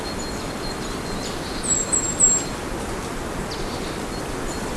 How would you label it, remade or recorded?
recorded